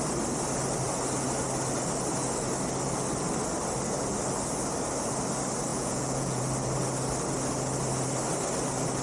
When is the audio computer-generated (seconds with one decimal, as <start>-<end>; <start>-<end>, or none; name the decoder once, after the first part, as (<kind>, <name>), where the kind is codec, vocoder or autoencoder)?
5.7-6.4 (vocoder, Vocos)

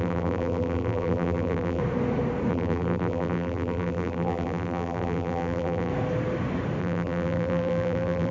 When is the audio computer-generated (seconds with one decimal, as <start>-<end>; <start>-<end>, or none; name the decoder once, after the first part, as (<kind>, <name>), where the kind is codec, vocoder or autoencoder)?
0.0-1.8 (vocoder, BigVGAN v2); 2.5-5.9; 6.8-8.3